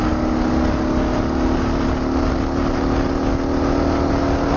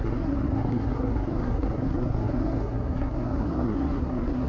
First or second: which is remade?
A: second